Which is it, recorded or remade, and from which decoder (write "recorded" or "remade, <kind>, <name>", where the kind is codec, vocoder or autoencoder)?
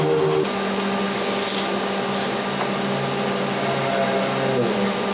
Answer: recorded